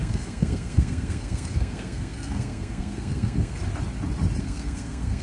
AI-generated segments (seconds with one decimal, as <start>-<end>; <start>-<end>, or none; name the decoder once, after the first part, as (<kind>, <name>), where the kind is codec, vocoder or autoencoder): 0.0-3.6 (codec, SNAC); 4.4-5.2